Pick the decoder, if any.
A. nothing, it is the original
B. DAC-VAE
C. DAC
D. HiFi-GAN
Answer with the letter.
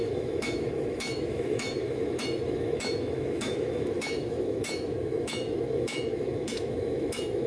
B